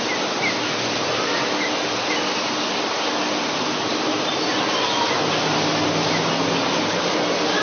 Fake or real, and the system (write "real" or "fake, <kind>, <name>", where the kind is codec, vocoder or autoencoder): real